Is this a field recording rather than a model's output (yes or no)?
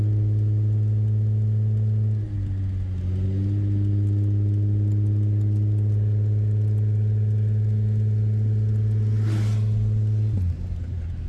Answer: yes